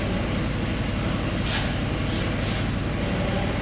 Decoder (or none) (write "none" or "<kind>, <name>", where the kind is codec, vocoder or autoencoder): none